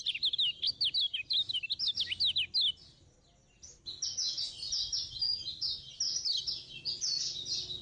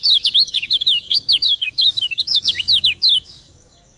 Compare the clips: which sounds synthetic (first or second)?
second